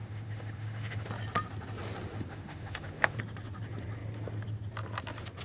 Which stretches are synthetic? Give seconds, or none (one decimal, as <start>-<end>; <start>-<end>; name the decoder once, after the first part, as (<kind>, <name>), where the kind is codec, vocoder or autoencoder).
0.0-1.1 (autoencoder, DAC-VAE); 2.3-3.2